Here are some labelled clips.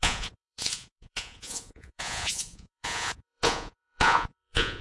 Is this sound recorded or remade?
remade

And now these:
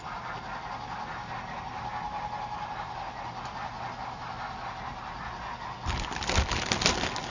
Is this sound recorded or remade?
recorded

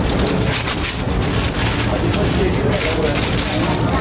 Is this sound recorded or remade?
recorded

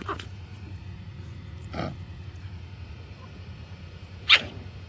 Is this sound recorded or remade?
remade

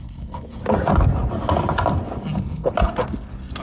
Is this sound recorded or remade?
recorded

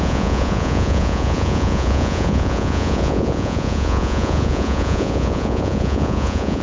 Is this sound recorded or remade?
remade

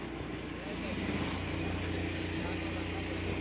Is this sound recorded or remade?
recorded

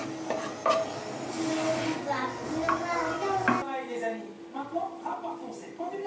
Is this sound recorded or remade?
recorded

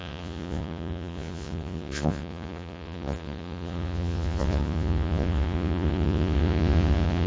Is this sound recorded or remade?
remade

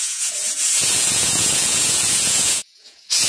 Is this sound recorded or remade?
remade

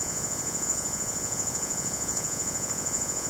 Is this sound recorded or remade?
remade